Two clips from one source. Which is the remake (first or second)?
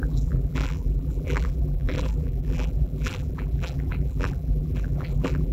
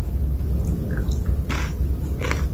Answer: first